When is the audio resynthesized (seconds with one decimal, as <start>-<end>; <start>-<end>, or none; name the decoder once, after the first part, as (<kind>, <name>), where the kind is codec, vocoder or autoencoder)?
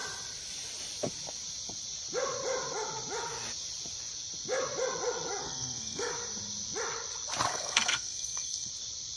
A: 5.4-6.1 (codec, SNAC); 7.5-8.7